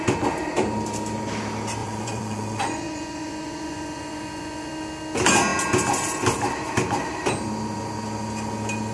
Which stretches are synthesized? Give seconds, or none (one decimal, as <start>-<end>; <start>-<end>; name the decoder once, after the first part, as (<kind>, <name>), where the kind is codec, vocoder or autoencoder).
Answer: 1.8-4.7 (vocoder, Vocos)

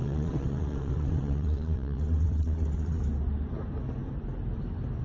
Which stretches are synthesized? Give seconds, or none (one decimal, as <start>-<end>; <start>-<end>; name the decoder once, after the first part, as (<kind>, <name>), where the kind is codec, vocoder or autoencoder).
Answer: 0.0-3.0 (vocoder, WaveNeXt)

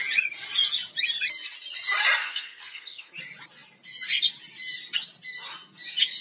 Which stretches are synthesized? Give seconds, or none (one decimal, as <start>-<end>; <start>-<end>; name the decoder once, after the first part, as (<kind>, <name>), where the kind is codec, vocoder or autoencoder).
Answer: 2.2-3.1 (codec, SNAC)